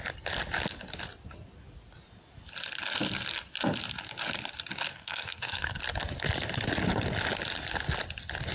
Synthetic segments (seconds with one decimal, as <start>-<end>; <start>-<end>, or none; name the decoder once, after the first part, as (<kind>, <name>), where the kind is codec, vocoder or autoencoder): 4.9-5.8 (codec, SNAC)